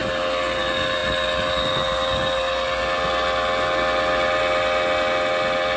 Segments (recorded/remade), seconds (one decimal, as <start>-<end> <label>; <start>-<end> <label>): 0.0-5.8 recorded